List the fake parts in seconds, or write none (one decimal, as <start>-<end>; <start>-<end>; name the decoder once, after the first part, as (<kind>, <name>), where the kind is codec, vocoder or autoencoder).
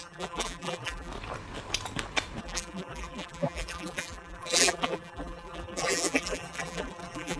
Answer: 0.0-1.1 (vocoder, BigVGAN v2); 2.4-7.4